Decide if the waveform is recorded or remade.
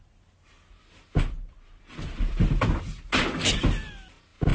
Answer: recorded